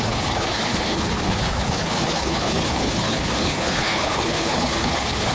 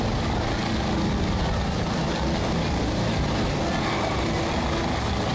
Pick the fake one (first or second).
first